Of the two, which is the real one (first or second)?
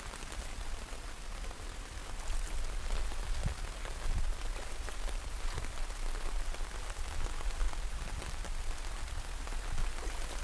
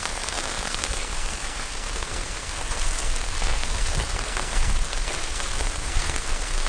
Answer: first